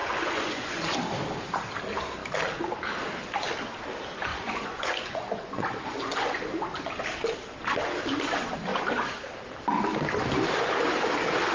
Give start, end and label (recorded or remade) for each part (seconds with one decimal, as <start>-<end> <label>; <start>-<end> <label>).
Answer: 0.0-1.0 remade; 1.0-4.3 recorded; 4.3-6.4 remade; 6.4-11.5 recorded

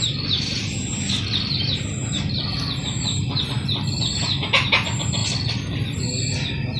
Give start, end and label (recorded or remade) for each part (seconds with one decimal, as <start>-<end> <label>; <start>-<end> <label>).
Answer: 0.0-6.8 recorded

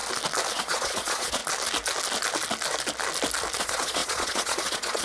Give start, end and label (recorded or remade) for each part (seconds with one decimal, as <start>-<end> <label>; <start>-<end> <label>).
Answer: 0.0-0.5 recorded; 0.5-1.4 remade; 1.4-3.6 recorded; 3.6-5.0 remade